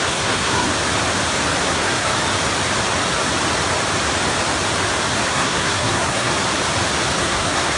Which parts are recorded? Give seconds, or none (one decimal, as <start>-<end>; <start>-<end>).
0.7-1.6; 2.1-5.3; 6.3-7.2

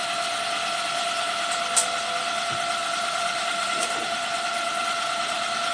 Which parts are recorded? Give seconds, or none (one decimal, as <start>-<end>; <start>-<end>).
0.0-2.8; 4.7-5.7

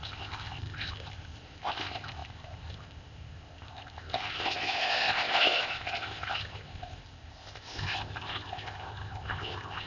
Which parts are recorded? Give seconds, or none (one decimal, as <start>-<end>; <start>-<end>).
none

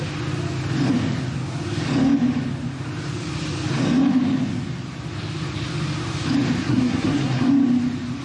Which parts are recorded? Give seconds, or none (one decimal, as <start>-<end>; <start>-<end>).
0.0-6.6; 7.5-8.2